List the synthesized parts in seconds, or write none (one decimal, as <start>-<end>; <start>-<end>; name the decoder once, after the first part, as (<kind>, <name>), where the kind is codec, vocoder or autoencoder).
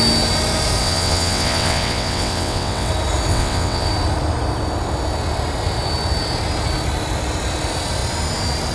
0.8-2.9 (vocoder, WaveNeXt); 3.3-3.9